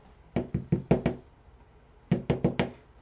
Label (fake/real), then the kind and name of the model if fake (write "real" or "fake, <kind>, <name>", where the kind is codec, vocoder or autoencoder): real